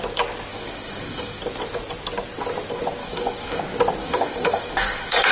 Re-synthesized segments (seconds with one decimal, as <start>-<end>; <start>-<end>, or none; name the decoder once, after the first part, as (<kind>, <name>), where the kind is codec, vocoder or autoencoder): 0.5-1.4 (codec, DAC); 3.0-3.6; 4.0-5.3